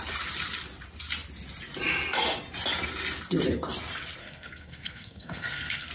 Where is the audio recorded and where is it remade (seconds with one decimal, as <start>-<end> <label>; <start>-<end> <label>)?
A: 0.0-4.2 recorded; 4.2-5.9 remade